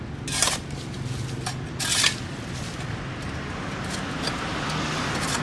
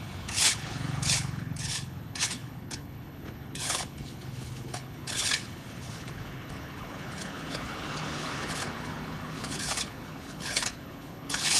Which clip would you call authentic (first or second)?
first